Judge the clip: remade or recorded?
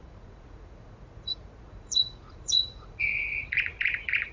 remade